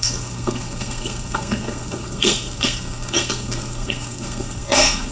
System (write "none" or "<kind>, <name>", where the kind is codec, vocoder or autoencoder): codec, SNAC